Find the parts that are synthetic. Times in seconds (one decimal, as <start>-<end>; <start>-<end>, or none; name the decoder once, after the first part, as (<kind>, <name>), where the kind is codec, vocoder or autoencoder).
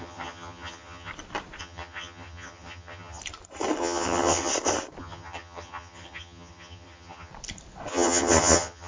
0.0-1.1 (vocoder, HiFi-GAN); 1.6-3.2; 3.8-4.5; 5.0-7.3; 7.9-8.9